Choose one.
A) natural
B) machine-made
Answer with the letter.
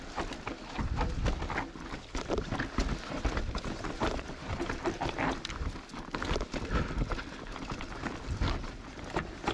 A